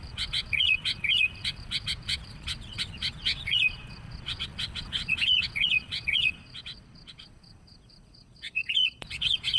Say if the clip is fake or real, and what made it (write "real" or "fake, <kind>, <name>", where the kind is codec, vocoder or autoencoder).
fake, vocoder, Vocos